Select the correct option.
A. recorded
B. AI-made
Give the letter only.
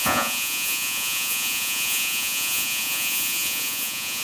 B